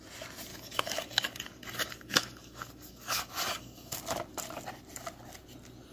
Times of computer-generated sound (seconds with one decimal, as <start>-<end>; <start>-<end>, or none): 0.5-4.0